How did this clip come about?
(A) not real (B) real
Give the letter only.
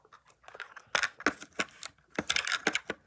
B